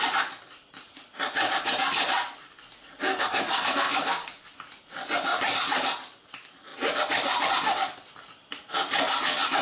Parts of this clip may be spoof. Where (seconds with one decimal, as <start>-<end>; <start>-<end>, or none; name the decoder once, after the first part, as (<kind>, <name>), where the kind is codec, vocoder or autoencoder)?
3.1-4.4 (codec, SNAC)